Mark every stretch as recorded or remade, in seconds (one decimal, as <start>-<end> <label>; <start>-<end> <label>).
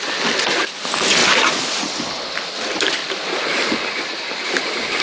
0.0-1.2 recorded; 1.2-1.8 remade; 1.8-5.0 recorded